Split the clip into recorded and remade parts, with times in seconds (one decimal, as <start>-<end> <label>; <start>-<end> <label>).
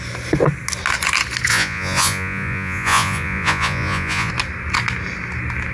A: 0.0-1.5 recorded; 1.5-4.3 remade; 4.3-5.7 recorded